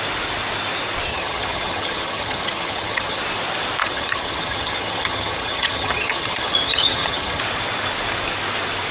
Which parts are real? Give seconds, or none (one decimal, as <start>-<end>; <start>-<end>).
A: 0.0-1.1; 3.2-3.8; 7.4-8.9